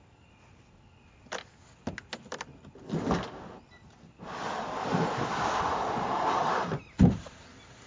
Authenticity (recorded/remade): recorded